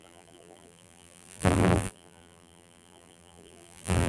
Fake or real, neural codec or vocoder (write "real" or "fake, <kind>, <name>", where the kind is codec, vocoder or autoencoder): fake, vocoder, BigVGAN v2